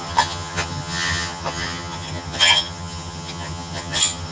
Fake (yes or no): yes